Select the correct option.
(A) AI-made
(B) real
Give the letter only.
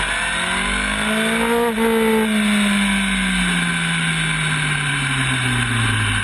B